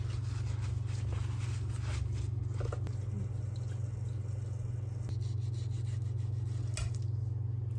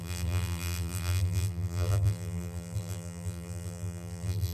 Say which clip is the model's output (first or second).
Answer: second